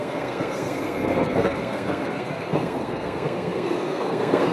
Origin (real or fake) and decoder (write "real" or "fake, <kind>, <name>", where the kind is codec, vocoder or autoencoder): fake, codec, SNAC